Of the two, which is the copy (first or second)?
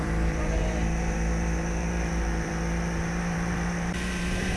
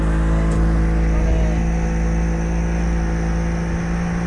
first